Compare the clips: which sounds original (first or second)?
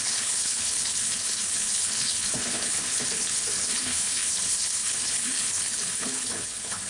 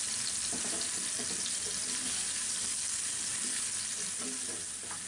second